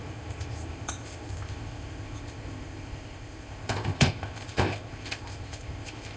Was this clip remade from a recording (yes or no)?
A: yes